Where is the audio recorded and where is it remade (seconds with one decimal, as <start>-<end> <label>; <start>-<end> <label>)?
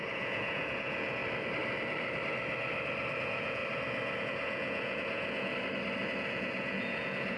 0.0-1.2 remade; 1.2-3.2 recorded; 3.2-3.6 remade; 3.6-4.2 recorded; 4.2-5.5 remade; 5.5-6.2 recorded; 6.2-7.4 remade